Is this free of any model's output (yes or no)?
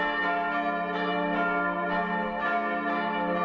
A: yes